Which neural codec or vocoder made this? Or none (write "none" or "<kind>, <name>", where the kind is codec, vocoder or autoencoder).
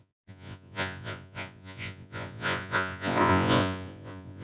vocoder, Vocos